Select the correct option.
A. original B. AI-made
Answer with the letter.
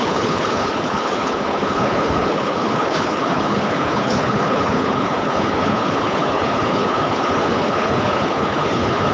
B